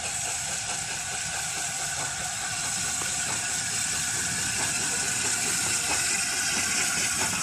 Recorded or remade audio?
recorded